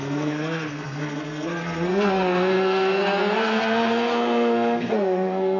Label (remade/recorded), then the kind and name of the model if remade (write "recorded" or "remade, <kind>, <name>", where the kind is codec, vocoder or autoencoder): remade, codec, SNAC